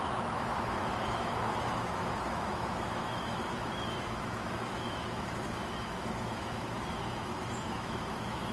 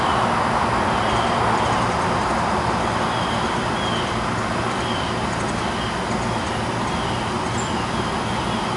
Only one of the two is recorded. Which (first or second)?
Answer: second